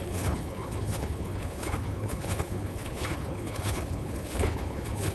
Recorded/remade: remade